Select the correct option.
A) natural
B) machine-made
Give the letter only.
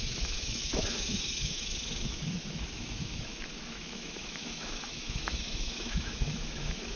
B